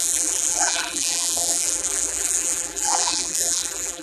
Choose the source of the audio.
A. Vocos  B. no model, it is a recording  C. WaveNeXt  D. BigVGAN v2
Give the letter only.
D